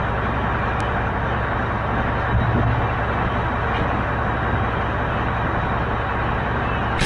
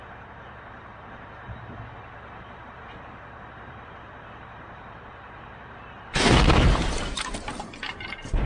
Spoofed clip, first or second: second